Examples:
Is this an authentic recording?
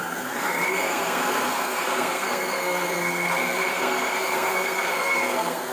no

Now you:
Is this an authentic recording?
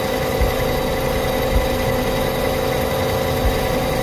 yes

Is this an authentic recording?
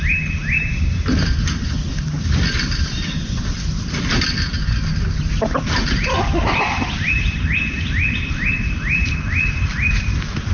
yes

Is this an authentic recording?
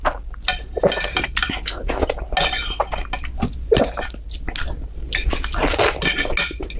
yes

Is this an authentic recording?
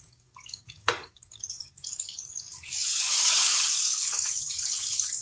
no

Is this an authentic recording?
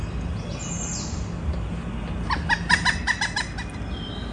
yes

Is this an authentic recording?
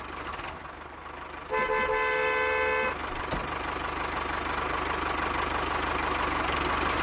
yes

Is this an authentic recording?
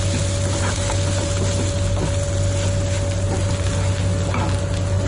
yes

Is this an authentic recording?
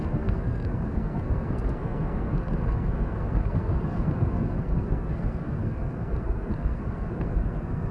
no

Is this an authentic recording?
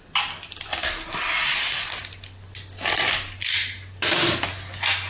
yes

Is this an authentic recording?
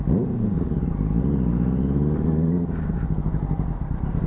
yes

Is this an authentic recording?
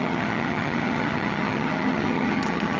no